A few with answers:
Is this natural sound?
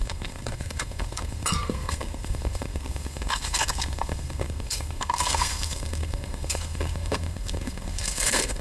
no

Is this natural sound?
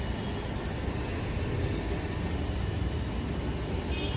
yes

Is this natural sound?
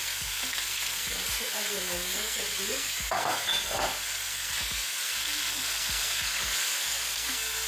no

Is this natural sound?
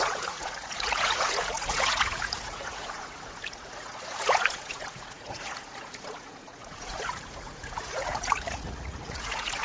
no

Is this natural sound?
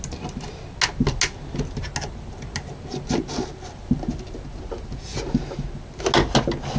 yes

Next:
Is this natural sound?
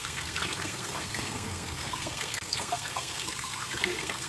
no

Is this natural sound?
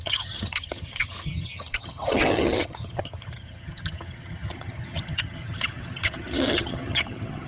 no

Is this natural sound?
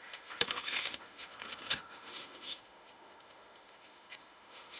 no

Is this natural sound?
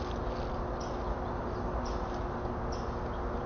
yes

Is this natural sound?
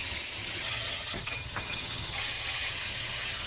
no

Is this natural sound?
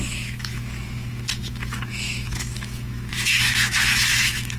no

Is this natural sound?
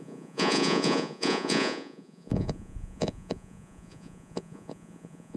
no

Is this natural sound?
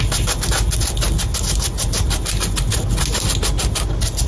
yes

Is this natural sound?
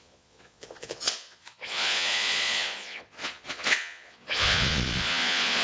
no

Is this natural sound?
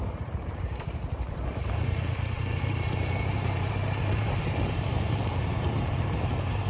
no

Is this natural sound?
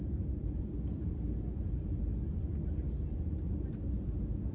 yes